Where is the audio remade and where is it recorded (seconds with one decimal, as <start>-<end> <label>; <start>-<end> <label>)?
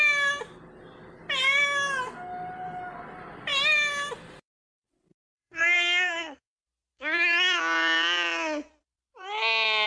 0.0-5.1 recorded; 5.1-6.5 remade; 6.5-9.9 recorded